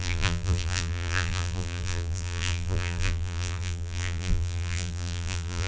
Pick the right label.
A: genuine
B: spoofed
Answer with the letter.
B